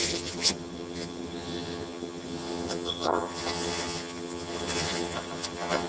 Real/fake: fake